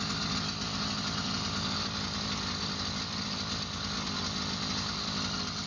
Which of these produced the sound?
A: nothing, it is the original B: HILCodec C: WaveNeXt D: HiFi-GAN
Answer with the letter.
A